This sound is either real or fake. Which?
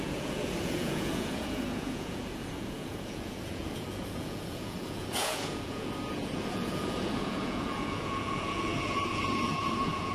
fake